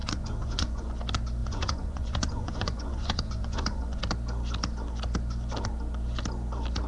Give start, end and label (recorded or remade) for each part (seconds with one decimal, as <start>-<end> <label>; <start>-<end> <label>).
0.0-0.9 remade; 0.9-1.4 recorded; 1.4-4.0 remade; 4.0-6.9 recorded